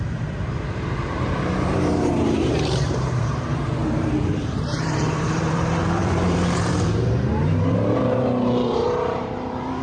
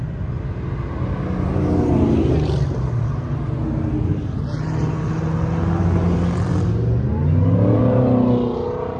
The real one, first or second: second